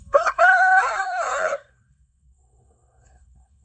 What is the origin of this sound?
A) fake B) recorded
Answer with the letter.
A